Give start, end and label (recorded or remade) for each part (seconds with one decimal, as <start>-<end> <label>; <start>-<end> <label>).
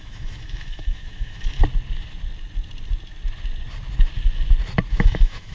0.0-1.6 remade; 1.6-4.9 recorded; 4.9-5.5 remade